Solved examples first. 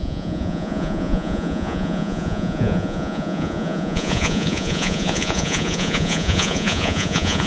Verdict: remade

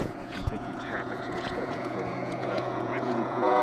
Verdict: remade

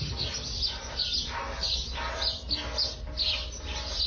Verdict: recorded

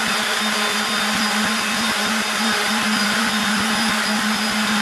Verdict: remade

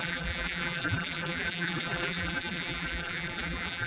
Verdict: remade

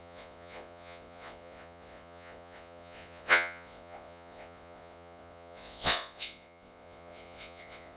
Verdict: remade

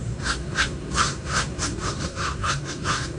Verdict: remade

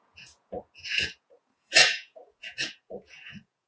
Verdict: remade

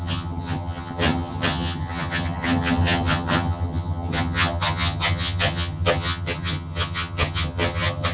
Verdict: remade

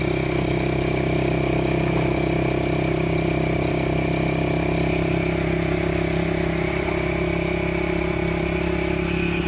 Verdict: recorded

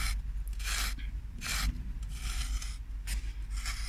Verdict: recorded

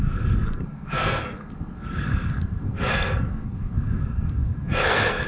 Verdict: remade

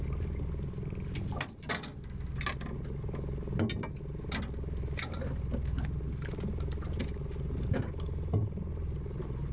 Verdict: recorded